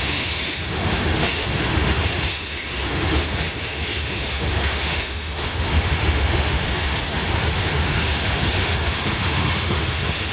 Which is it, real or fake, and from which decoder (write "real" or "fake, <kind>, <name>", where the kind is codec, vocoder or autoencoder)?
fake, autoencoder, DAC-VAE